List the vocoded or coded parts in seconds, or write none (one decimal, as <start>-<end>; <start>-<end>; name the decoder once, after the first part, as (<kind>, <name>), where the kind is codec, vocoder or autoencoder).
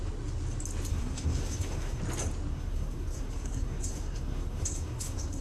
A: 0.9-2.0 (codec, SNAC); 2.5-5.4